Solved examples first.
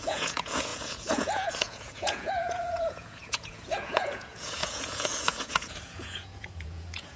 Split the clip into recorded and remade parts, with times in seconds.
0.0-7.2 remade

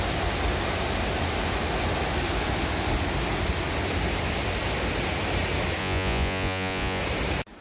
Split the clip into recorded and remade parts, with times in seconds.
0.0-5.8 recorded; 5.8-7.0 remade; 7.0-7.6 recorded

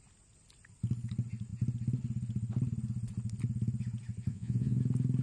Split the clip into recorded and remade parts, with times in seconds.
0.0-4.3 recorded; 4.3-4.8 remade; 4.8-5.2 recorded

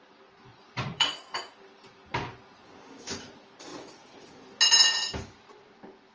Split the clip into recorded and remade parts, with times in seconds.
0.0-0.5 recorded; 0.5-1.2 remade; 1.2-3.7 recorded; 3.7-4.4 remade; 4.4-6.1 recorded

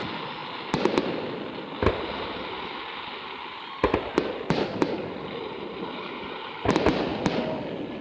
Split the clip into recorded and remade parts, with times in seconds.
0.0-8.0 recorded